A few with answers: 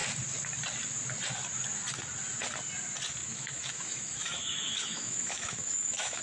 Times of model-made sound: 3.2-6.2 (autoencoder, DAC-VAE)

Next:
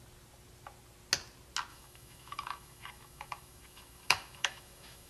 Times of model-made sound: 1.7-5.1 (autoencoder, DAC-VAE)

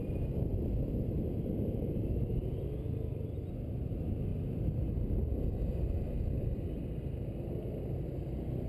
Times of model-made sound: none